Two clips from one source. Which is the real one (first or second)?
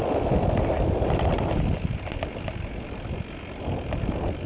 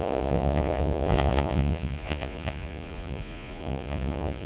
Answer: first